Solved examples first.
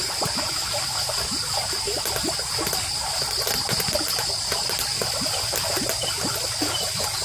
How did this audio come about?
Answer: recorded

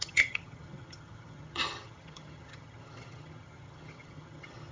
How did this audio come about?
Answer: remade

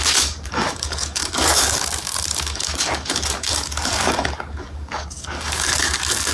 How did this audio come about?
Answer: remade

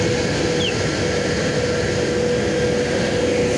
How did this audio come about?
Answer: recorded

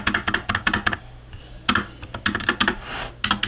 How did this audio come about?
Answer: recorded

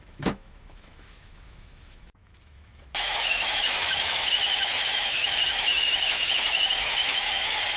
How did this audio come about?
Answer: remade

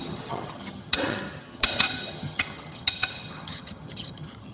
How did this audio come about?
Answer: remade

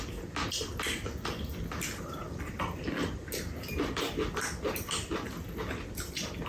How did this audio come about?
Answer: recorded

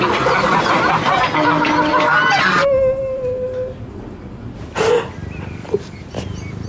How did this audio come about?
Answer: recorded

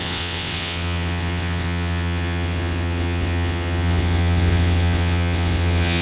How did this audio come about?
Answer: remade